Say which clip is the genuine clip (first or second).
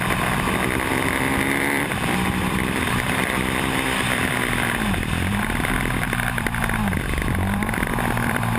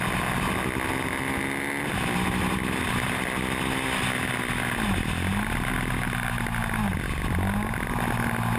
second